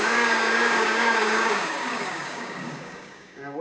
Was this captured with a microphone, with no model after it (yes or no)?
no